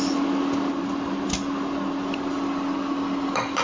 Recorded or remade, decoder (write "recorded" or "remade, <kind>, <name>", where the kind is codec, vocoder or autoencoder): recorded